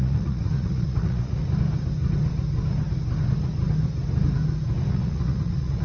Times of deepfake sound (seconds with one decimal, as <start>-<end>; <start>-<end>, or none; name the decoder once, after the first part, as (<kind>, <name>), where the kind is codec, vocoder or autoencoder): 0.0-1.4 (vocoder, Vocos); 4.9-5.8